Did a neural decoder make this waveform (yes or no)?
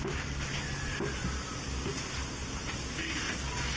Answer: no